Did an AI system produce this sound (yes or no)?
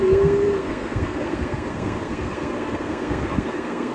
yes